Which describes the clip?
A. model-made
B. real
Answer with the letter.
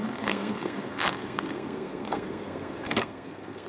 A